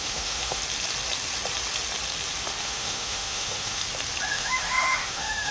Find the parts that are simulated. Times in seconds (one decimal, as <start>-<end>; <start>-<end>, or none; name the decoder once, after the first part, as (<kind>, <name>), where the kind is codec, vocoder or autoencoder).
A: 0.0-0.6 (autoencoder, DAC-VAE); 2.6-3.8; 4.3-5.5

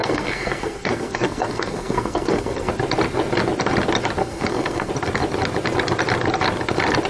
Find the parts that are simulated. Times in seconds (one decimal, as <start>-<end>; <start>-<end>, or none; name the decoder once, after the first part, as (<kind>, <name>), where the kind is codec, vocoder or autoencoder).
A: 0.0-2.7 (codec, SNAC); 4.2-4.9

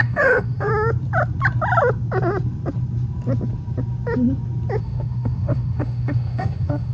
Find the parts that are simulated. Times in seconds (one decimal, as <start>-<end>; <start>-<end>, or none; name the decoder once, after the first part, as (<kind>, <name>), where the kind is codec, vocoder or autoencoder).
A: 0.0-0.7 (autoencoder, DAC-VAE); 4.8-6.9

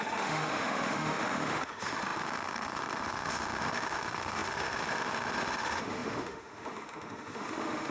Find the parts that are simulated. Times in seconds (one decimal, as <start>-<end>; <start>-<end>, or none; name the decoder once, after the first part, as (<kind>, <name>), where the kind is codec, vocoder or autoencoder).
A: 0.0-7.9 (autoencoder, DAC-VAE)